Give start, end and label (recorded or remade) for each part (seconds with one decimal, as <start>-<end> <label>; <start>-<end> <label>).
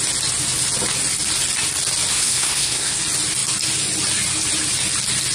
0.0-2.1 recorded; 2.1-3.0 remade; 3.0-5.3 recorded